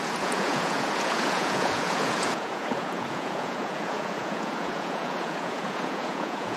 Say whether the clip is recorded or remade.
remade